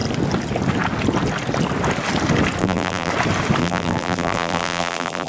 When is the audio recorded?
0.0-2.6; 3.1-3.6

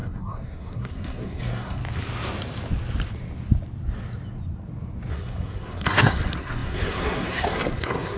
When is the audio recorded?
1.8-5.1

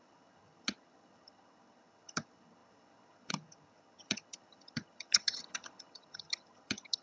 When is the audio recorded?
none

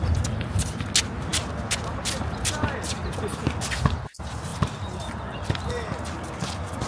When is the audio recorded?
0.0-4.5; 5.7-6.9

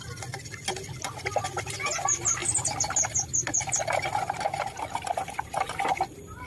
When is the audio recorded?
0.0-6.5

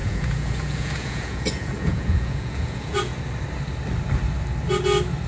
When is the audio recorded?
3.2-5.3